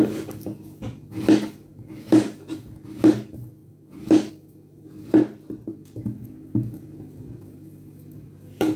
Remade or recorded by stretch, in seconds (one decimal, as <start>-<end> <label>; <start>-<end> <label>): 0.0-5.2 remade; 5.2-5.7 recorded; 5.7-8.8 remade